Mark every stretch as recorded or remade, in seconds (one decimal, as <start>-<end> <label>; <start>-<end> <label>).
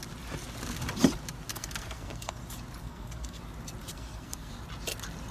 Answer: 0.0-1.5 recorded; 1.5-2.4 remade; 2.4-2.8 recorded; 2.8-3.4 remade; 3.4-3.9 recorded; 3.9-4.5 remade; 4.5-5.3 recorded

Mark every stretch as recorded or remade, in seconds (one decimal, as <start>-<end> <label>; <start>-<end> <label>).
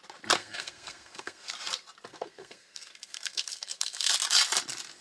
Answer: 0.0-0.4 recorded; 0.4-1.5 remade; 1.5-2.1 recorded; 2.1-4.1 remade; 4.1-5.0 recorded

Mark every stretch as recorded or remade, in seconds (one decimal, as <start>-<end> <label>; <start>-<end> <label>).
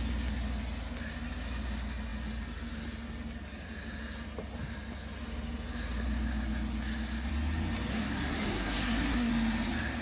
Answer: 0.0-7.9 recorded; 7.9-9.3 remade; 9.3-10.0 recorded